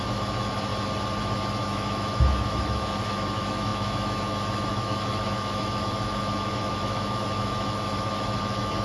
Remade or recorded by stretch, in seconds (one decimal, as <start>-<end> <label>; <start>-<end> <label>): 0.0-0.7 remade; 0.7-1.2 recorded; 1.2-8.8 remade